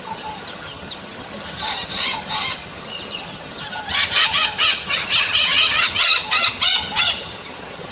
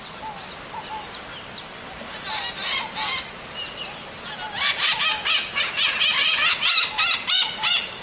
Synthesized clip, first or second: first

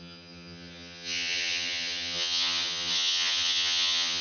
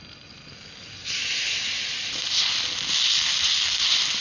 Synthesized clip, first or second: first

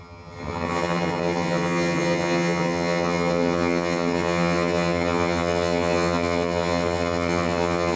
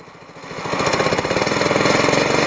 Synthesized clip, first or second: first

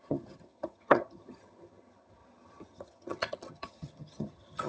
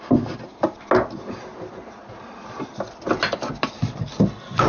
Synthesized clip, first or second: first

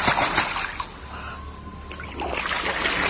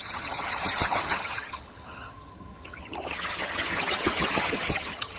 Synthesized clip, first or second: second